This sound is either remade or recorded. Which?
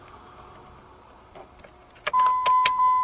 recorded